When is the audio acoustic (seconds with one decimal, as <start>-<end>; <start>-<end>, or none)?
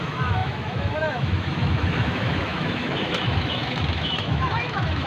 none